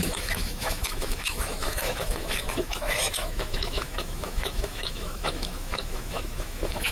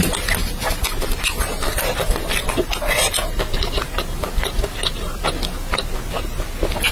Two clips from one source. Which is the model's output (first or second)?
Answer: first